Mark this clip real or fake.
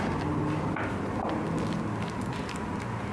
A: real